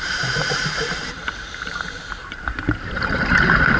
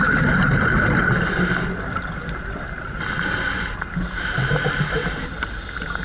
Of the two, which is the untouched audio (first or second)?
second